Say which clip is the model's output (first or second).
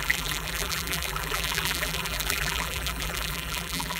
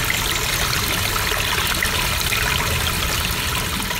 first